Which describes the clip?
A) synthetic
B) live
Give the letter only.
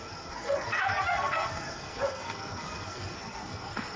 A